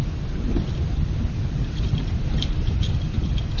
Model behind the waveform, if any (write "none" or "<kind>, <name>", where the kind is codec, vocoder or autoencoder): none